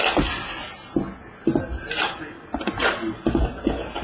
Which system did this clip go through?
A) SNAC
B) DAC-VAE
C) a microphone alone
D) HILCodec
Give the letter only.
C